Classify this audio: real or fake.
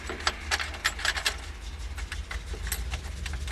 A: real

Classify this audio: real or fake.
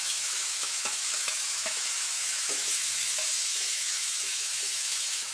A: fake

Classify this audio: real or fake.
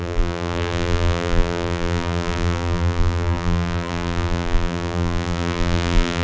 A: fake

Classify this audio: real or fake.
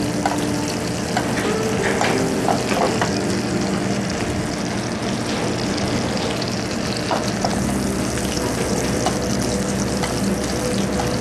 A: real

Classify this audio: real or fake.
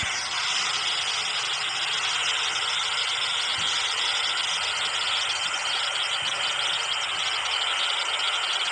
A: real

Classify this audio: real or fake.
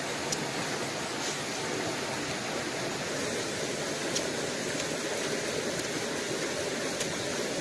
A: real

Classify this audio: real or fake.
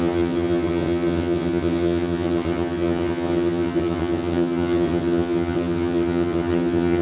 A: fake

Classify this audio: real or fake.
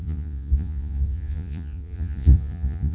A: fake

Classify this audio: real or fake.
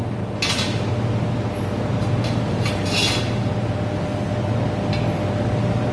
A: real